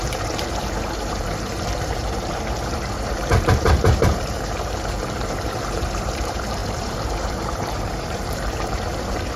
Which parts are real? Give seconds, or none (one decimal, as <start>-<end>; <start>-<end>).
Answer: none